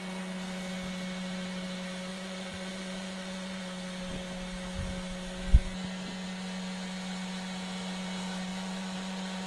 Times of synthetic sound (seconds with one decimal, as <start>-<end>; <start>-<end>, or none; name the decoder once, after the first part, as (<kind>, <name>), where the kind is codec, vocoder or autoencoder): 2.1-3.6 (vocoder, Vocos); 8.5-9.5